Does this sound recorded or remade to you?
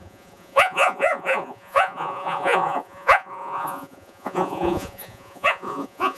remade